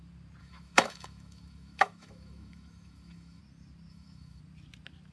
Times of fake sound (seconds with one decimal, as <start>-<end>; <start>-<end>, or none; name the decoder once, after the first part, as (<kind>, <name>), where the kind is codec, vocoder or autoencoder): 0.4-3.4 (autoencoder, DAC-VAE); 3.9-4.4